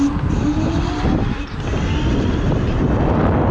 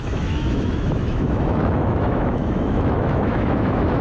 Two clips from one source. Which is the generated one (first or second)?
second